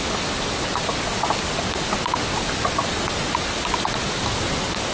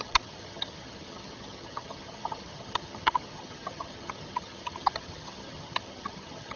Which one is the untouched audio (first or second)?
first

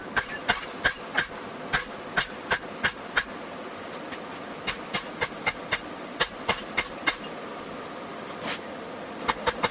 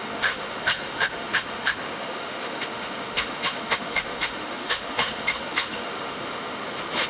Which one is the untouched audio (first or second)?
first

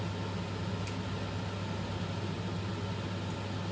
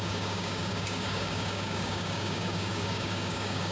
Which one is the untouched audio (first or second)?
first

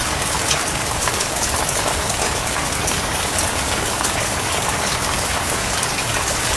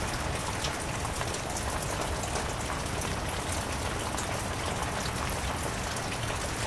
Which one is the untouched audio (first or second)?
second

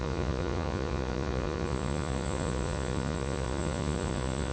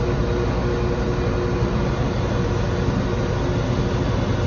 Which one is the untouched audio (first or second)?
second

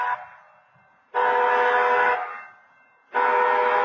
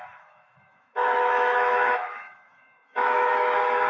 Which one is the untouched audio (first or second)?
first